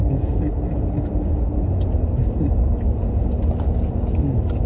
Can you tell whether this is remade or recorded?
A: recorded